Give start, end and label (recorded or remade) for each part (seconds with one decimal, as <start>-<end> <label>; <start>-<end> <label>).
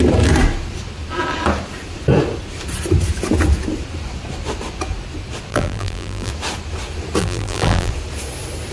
0.0-5.5 recorded; 5.5-6.3 remade; 6.3-7.2 recorded; 7.2-7.9 remade; 7.9-8.7 recorded